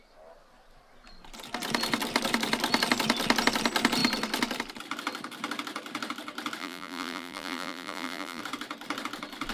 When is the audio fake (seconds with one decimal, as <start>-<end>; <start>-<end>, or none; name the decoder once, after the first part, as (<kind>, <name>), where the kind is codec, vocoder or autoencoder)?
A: 6.6-8.4 (vocoder, BigVGAN v2)